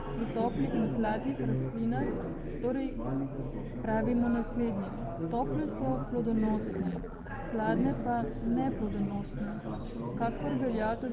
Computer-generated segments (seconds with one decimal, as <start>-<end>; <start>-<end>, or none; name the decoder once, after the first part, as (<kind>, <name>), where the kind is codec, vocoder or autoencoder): 6.7-7.3 (vocoder, BigVGAN v2)